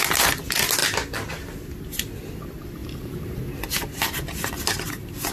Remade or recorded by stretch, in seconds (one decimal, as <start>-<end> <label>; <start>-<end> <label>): 0.0-2.8 recorded; 2.8-3.4 remade; 3.4-5.3 recorded